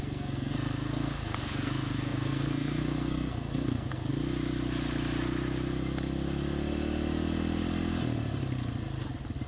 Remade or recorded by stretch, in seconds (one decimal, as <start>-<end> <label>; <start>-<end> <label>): 0.0-4.1 remade; 4.1-9.5 recorded